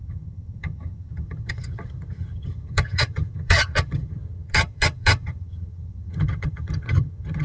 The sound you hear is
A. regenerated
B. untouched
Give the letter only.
A